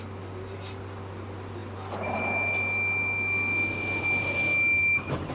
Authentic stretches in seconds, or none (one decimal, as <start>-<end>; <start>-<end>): 0.0-5.3